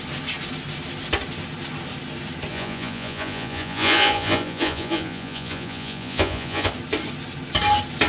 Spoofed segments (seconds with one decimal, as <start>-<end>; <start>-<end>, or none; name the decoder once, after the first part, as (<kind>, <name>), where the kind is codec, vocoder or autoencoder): 2.5-6.7 (vocoder, Vocos)